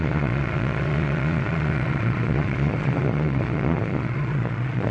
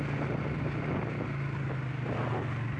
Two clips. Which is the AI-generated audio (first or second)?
first